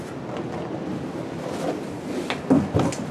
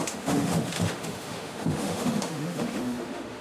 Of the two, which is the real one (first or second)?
first